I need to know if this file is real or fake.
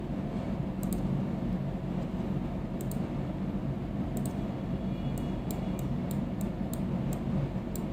real